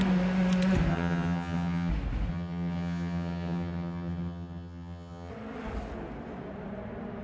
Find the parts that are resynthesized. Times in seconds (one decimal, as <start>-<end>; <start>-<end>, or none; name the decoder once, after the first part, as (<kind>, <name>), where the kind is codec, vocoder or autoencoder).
0.9-1.9 (vocoder, HiFi-GAN); 2.3-5.3